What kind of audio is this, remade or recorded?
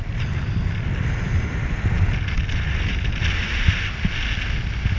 recorded